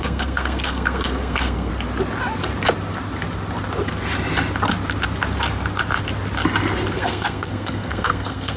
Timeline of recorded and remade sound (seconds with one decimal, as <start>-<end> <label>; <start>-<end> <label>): 0.0-1.7 remade; 1.7-6.9 recorded; 6.9-8.6 remade